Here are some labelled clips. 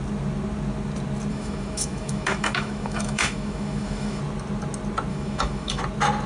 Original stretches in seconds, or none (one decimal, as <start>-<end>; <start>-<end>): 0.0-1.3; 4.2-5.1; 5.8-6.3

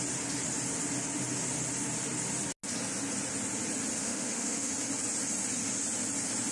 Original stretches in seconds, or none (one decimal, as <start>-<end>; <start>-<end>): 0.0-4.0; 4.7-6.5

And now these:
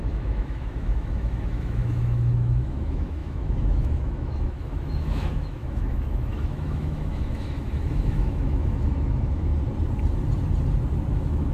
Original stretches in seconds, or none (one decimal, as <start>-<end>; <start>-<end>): 9.5-11.1